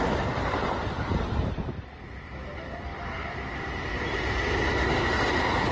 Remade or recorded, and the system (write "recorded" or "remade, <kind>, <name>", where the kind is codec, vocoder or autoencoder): recorded